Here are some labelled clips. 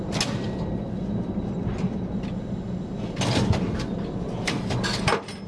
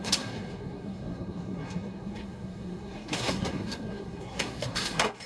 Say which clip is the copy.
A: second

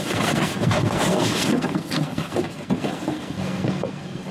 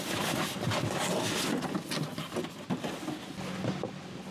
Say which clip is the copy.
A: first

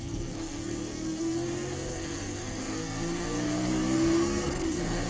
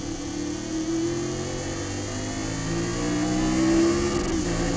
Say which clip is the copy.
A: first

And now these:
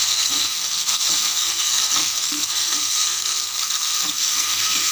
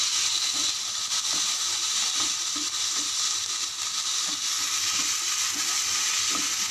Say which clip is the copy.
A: first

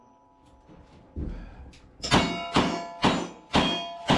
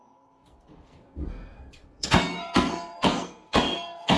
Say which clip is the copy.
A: second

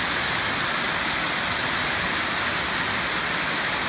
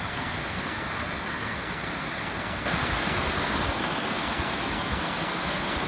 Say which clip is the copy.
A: second